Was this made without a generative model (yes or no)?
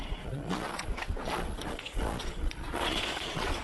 no